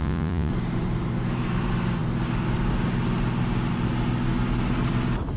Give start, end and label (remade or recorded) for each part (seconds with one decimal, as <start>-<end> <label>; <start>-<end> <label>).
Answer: 0.0-0.5 remade; 0.5-5.4 recorded